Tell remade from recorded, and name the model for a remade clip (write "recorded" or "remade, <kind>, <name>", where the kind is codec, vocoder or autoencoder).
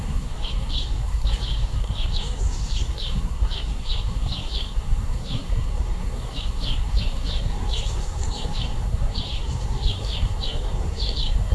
remade, codec, SNAC